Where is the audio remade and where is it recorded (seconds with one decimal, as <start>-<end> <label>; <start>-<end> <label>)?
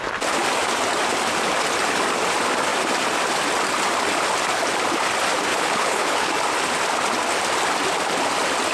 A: 0.0-5.5 recorded; 5.5-6.3 remade; 6.3-8.7 recorded